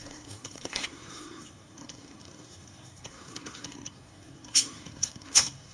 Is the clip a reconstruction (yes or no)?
yes